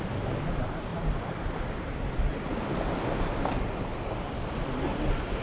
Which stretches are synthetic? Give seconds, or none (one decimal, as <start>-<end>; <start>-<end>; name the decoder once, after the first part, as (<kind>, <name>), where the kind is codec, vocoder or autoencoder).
none